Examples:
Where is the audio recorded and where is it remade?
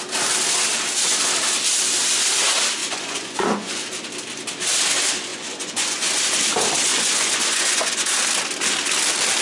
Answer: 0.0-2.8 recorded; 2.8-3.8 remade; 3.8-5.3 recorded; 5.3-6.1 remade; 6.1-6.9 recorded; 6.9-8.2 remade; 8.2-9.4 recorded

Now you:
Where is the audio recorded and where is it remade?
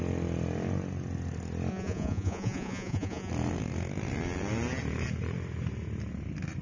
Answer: 0.0-1.7 recorded; 1.7-3.3 remade; 3.3-6.6 recorded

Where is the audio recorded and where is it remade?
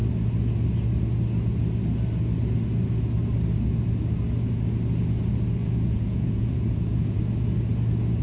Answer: 0.0-5.6 recorded; 5.6-7.2 remade; 7.2-8.2 recorded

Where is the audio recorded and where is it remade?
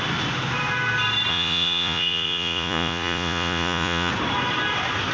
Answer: 0.0-1.3 recorded; 1.3-4.1 remade; 4.1-5.1 recorded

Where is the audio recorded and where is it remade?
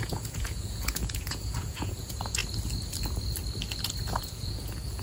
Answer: 0.0-2.4 remade; 2.4-4.2 recorded; 4.2-5.0 remade